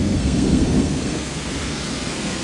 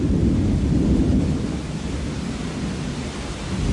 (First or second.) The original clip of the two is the second